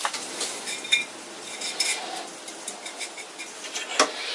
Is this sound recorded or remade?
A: recorded